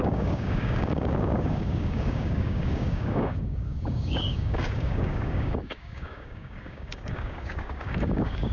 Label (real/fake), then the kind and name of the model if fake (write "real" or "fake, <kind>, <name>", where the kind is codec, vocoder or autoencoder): fake, codec, DAC